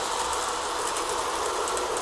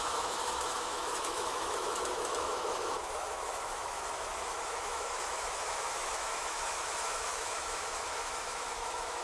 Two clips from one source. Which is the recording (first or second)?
first